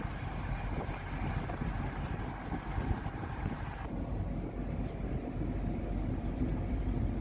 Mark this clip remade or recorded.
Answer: recorded